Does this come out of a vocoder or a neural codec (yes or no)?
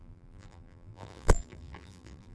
yes